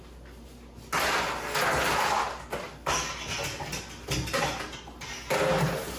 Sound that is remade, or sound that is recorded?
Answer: recorded